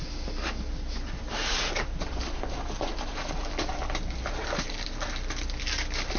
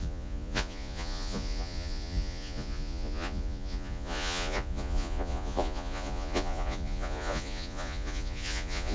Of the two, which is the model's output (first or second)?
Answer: second